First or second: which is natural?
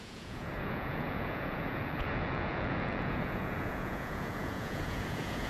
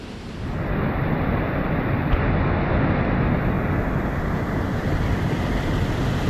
second